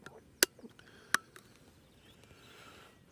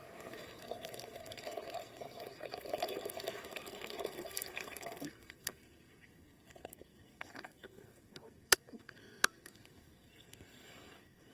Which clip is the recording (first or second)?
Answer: first